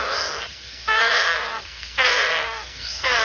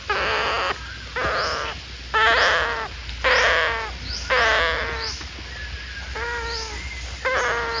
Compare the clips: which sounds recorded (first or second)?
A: second